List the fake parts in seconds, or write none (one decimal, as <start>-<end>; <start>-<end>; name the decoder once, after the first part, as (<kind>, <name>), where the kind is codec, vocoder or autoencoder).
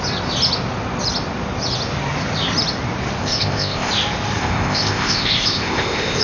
3.2-3.9 (codec, ZipCodec); 4.4-6.2